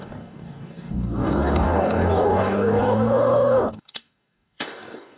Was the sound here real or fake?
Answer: fake